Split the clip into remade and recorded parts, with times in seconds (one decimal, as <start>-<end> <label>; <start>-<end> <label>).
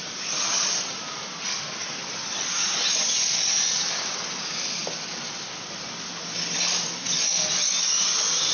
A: 0.0-3.5 recorded; 3.5-4.2 remade; 4.2-8.5 recorded